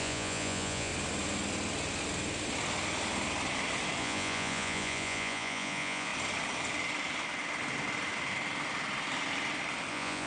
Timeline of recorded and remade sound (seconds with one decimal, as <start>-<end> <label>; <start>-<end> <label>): 0.0-0.9 remade; 0.9-4.0 recorded; 4.0-6.1 remade; 6.1-9.9 recorded; 9.9-10.3 remade